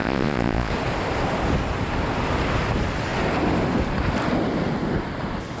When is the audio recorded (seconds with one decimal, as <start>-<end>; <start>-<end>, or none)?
0.7-5.6